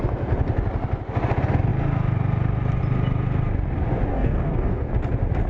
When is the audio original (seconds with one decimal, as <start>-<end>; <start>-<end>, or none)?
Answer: 0.0-4.1; 4.9-5.5

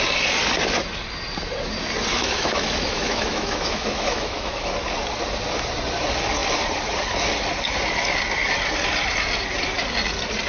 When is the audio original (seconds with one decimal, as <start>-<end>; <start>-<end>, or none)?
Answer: 0.0-2.1; 4.7-10.5

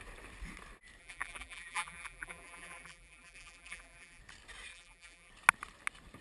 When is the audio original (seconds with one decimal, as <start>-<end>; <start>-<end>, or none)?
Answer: 0.0-1.0; 4.2-4.7; 5.3-6.2

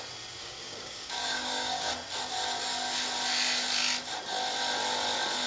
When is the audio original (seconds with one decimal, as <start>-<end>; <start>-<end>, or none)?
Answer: 0.0-0.4; 1.9-5.5